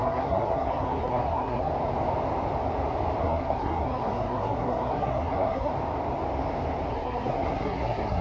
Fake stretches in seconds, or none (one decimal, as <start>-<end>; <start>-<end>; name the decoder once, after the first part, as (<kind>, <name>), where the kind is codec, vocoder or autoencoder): 0.0-1.7 (codec, SNAC); 3.2-5.7; 6.9-8.2